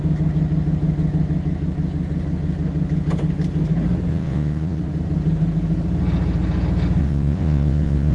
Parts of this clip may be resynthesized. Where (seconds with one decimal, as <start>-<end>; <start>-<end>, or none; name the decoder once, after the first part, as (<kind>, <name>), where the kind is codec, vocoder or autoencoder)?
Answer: 4.1-4.8 (vocoder, Vocos); 7.0-8.1